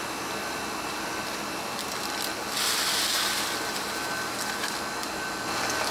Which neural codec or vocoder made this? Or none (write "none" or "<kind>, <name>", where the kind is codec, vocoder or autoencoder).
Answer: none